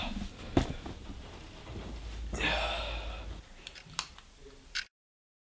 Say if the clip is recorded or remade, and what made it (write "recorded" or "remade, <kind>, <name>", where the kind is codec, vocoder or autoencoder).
recorded